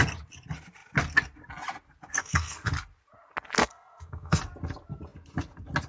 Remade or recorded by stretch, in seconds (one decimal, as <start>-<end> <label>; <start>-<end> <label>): 0.0-2.2 recorded; 2.2-2.7 remade; 2.7-3.6 recorded; 3.6-4.4 remade; 4.4-5.9 recorded